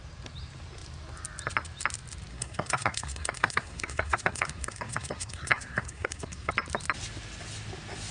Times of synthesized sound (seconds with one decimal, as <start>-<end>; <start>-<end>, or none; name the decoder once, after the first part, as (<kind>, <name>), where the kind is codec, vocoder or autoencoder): 2.3-6.5 (codec, SNAC)